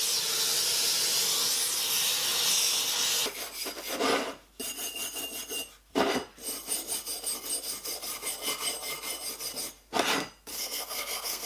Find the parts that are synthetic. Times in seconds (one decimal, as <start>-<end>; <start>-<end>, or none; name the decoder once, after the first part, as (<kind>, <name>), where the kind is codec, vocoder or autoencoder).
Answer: 10.5-11.5 (codec, SNAC)